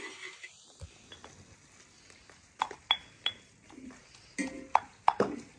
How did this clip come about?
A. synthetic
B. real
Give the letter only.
B